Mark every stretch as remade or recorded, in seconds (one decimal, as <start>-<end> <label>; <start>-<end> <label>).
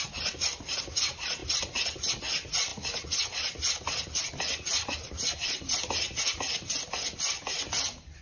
0.0-8.2 recorded